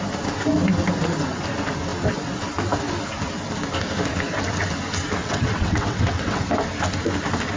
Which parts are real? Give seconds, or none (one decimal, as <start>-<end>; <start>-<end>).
0.0-5.2; 6.4-7.6